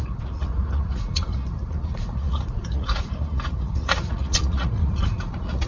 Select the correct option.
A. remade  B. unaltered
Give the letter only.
A